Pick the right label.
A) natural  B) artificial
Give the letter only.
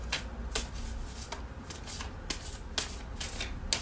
A